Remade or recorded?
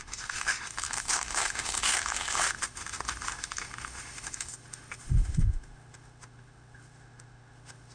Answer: remade